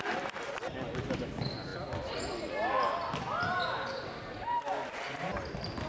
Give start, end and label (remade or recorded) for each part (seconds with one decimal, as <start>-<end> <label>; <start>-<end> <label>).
0.0-1.7 recorded; 1.7-2.5 remade; 2.5-5.9 recorded